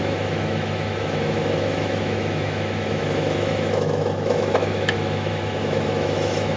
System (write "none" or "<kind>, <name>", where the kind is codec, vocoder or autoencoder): autoencoder, DAC-VAE